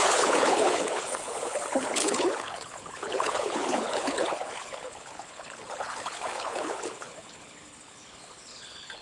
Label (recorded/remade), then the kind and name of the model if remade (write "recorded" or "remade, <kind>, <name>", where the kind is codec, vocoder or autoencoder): remade, codec, HILCodec